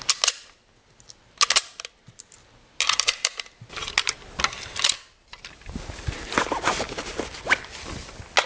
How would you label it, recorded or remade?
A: recorded